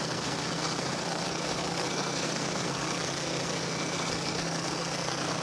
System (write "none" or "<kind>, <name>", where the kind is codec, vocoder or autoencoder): codec, SNAC